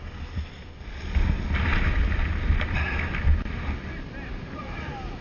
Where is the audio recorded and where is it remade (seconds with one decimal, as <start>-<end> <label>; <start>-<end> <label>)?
0.0-5.2 recorded

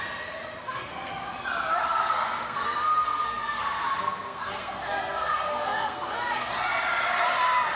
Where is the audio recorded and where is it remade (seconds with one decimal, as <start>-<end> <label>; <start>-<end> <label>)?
0.0-0.6 recorded; 0.6-1.1 remade; 1.1-1.8 recorded; 1.8-6.5 remade; 6.5-7.8 recorded

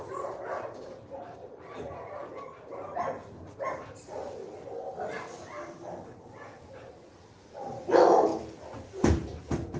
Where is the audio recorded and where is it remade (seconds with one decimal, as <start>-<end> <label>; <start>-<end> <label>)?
0.0-2.2 remade; 2.2-3.7 recorded; 3.7-4.4 remade; 4.4-6.6 recorded; 6.6-8.3 remade; 8.3-9.0 recorded; 9.0-9.8 remade